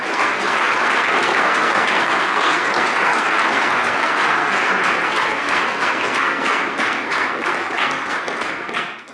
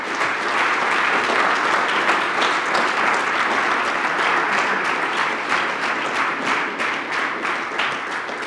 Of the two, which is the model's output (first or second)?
first